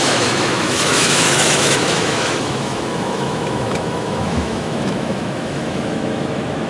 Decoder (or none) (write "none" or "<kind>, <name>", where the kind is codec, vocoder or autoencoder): autoencoder, DAC-VAE